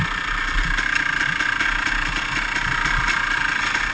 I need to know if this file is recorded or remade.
recorded